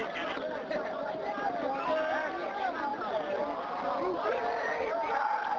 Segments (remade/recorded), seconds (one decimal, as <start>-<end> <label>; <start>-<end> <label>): 0.0-5.6 recorded